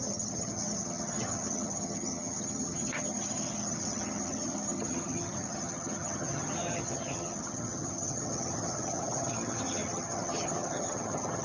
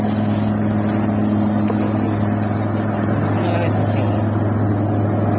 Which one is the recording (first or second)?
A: second